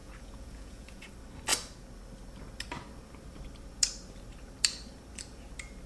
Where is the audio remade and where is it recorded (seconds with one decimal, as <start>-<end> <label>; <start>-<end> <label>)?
0.0-1.1 remade; 1.1-5.9 recorded